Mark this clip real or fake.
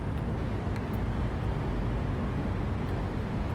real